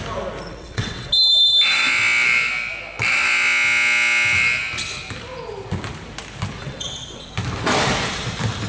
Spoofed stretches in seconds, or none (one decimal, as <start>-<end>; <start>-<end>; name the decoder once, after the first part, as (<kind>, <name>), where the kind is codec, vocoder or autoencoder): 0.5-1.1 (vocoder, WaveNeXt); 6.6-7.3